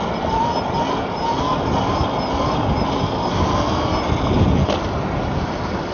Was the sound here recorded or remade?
recorded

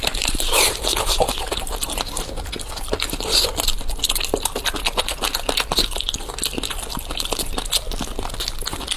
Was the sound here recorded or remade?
recorded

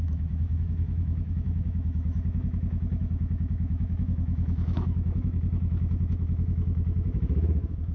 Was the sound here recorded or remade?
remade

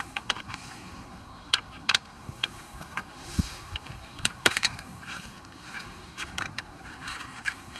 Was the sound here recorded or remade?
remade